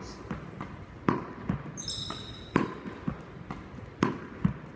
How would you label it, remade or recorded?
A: recorded